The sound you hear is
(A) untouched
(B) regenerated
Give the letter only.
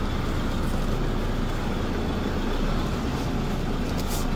A